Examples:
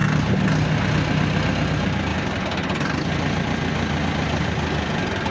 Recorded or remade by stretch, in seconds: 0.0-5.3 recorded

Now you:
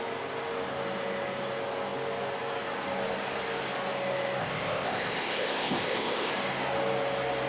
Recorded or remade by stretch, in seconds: 0.0-4.4 recorded; 4.4-6.3 remade; 6.3-7.5 recorded

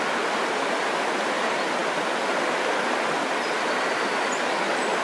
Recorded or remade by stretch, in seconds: 0.0-5.0 recorded

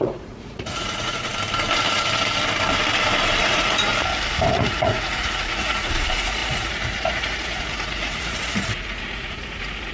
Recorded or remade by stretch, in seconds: 0.0-1.3 remade; 1.3-3.4 recorded; 3.4-3.9 remade; 3.9-4.5 recorded; 4.5-9.9 remade

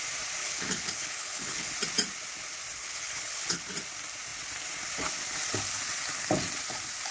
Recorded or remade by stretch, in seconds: 0.0-0.4 recorded; 0.4-1.7 remade; 1.7-2.7 recorded; 2.7-3.6 remade; 3.6-7.1 recorded